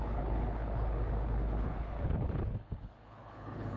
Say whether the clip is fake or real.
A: fake